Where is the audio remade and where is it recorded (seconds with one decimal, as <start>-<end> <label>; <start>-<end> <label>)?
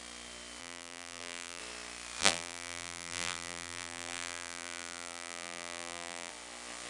0.0-0.6 recorded; 0.6-1.6 remade; 1.6-2.2 recorded; 2.2-6.3 remade; 6.3-6.9 recorded